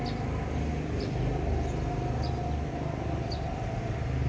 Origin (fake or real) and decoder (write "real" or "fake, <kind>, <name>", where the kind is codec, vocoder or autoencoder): real